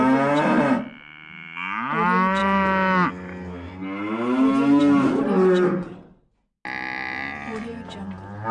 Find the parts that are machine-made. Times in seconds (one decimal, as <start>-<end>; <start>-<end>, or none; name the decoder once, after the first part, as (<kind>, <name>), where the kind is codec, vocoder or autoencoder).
none